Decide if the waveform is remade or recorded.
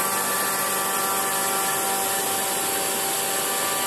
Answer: recorded